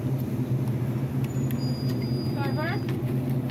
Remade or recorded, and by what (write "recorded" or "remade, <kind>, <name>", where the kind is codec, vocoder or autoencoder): recorded